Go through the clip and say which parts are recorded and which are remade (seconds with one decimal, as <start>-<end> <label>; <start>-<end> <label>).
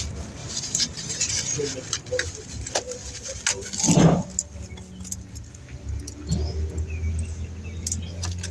0.0-0.4 recorded; 0.4-1.3 remade; 1.3-8.5 recorded